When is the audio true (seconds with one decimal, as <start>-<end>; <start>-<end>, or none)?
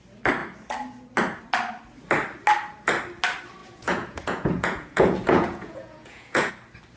0.0-3.6; 6.5-7.0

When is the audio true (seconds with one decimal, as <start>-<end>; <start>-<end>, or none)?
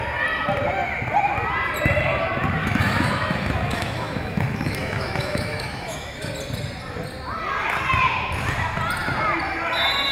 0.0-2.6; 6.3-10.1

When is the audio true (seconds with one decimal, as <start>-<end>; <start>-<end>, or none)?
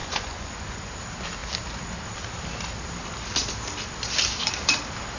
0.9-5.2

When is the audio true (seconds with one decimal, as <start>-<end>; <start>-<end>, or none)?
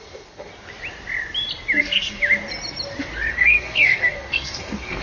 0.5-1.8; 2.2-3.3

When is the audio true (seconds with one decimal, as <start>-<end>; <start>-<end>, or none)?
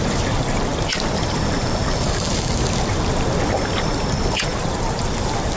0.0-5.6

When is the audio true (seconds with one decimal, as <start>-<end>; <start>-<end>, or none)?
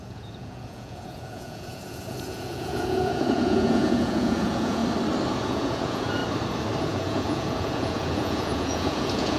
4.8-5.3; 6.2-6.8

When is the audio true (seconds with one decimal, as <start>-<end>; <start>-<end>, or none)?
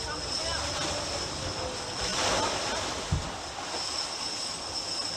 0.0-5.2